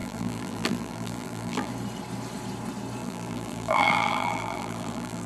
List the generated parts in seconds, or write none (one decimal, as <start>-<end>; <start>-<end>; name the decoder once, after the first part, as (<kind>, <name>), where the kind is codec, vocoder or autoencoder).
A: 0.0-1.7 (vocoder, BigVGAN v2); 3.0-5.3